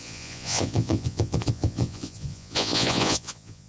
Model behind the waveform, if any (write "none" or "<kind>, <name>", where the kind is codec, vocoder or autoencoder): vocoder, Vocos